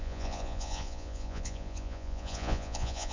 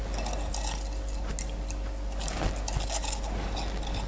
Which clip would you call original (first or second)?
second